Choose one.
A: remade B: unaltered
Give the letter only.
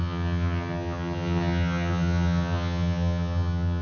A